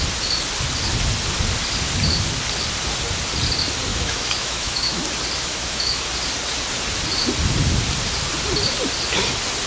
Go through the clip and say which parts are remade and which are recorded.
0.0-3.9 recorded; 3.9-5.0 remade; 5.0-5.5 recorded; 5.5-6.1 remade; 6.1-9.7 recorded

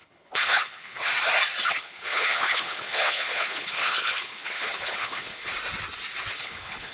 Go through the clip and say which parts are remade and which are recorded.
0.0-1.1 remade; 1.1-1.7 recorded; 1.7-5.5 remade; 5.5-6.3 recorded; 6.3-6.9 remade

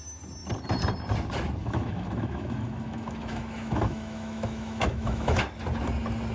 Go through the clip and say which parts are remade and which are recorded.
0.0-1.6 recorded; 1.6-5.4 remade; 5.4-6.3 recorded